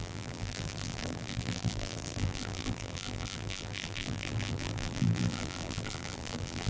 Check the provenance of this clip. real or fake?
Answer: fake